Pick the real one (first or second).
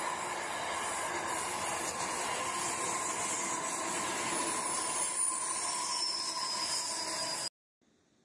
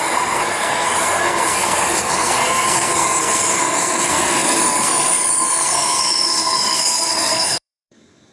first